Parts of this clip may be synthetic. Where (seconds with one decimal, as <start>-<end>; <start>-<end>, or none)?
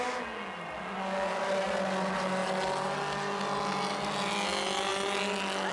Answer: none